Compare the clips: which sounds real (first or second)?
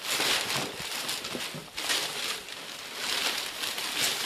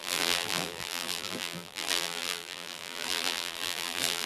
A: first